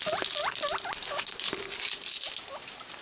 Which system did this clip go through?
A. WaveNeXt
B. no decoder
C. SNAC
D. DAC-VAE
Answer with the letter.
B